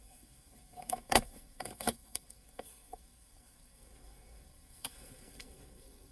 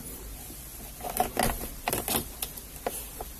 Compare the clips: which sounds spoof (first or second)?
first